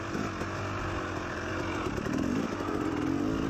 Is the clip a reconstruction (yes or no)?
no